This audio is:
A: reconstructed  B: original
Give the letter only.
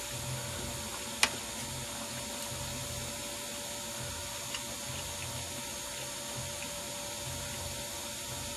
B